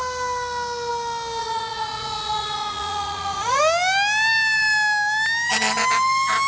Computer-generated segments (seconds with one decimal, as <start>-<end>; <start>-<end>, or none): 1.4-3.6